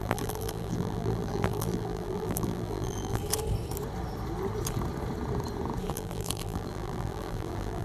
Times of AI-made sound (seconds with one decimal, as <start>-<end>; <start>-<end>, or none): 0.0-3.2; 5.9-7.8